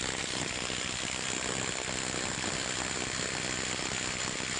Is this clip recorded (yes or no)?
yes